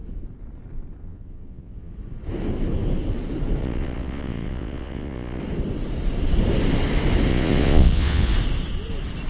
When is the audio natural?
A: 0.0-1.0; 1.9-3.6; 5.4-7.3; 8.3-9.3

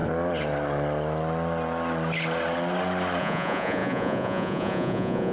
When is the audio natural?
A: 0.0-3.2